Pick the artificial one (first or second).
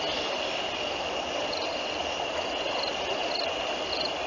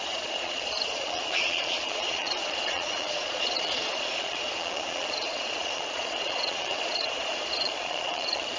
second